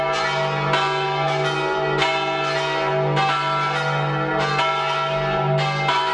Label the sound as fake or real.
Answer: real